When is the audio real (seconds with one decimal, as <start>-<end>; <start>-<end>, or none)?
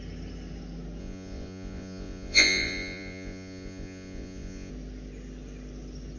0.0-1.0; 4.7-6.2